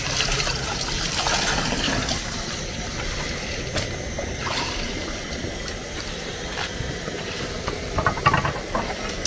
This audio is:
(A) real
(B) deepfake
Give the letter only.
B